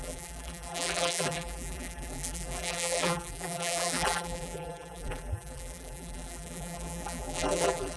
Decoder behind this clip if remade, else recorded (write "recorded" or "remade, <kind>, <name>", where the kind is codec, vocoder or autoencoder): remade, vocoder, BigVGAN v2